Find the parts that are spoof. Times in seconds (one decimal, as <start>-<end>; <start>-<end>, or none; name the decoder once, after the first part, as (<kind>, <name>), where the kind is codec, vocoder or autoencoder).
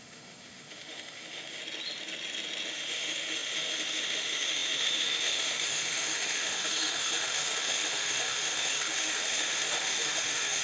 0.0-1.6 (autoencoder, DAC-VAE); 2.7-10.6